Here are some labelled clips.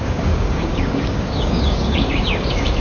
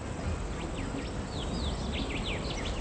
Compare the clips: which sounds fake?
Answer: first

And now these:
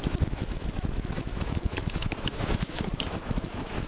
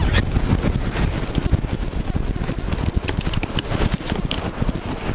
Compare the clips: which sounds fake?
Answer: first